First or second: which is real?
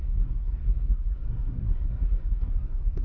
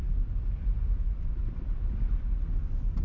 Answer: second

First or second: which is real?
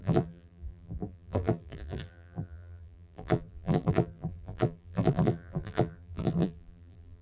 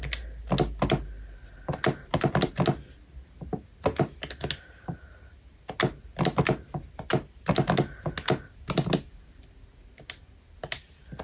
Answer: second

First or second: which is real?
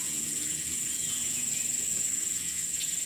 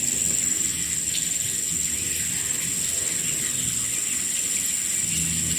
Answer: second